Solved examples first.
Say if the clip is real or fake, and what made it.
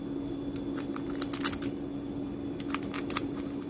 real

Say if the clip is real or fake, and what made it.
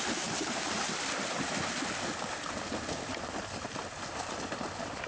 real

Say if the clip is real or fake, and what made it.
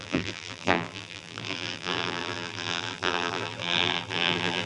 fake, vocoder, BigVGAN v2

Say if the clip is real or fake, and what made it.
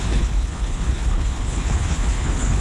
fake, codec, HILCodec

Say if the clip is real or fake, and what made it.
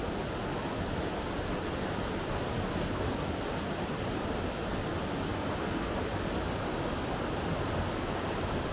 real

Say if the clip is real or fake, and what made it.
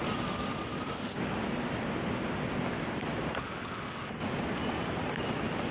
real